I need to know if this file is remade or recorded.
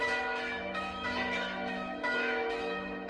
remade